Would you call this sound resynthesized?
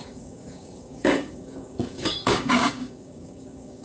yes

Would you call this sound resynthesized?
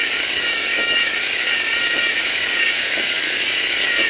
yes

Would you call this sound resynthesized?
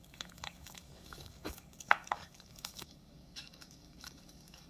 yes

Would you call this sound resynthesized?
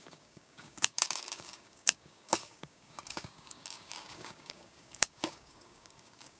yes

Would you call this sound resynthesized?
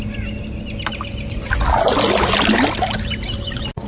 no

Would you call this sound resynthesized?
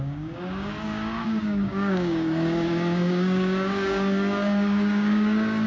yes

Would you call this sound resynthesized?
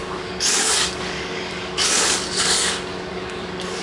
yes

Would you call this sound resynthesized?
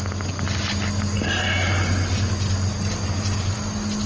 no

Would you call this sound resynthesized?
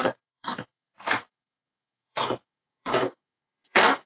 yes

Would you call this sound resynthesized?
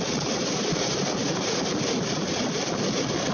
no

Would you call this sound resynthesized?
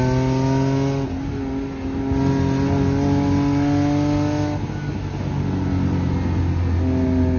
no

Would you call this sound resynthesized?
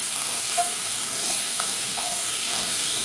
yes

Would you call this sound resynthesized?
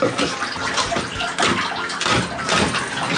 no